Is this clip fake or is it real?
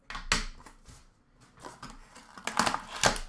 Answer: real